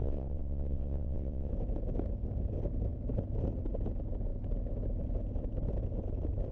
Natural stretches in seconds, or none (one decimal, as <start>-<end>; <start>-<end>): 1.5-6.5